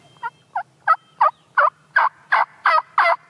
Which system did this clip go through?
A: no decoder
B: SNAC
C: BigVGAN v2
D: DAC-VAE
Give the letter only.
A